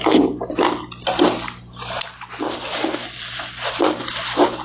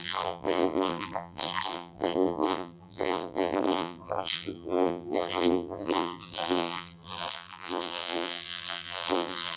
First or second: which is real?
first